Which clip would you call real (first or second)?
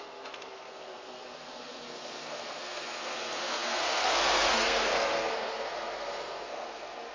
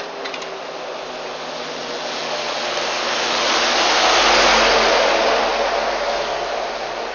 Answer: second